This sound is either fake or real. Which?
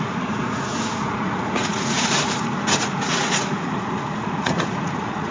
fake